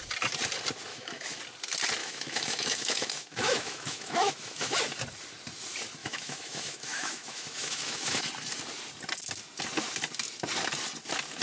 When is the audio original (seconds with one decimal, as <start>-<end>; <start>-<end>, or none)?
0.0-0.9; 1.4-2.0; 4.8-6.0; 8.3-11.4